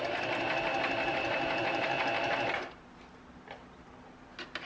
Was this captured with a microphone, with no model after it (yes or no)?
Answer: yes